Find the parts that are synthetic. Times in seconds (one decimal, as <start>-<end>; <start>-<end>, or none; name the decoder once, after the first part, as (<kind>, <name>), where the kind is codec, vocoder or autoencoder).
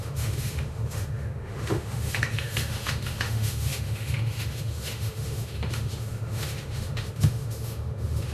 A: 0.0-8.3 (autoencoder, DAC-VAE)